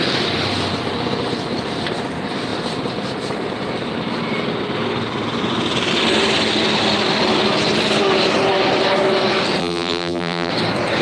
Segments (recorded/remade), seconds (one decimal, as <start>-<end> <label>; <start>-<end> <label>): 0.0-9.6 recorded; 9.6-10.5 remade; 10.5-11.0 recorded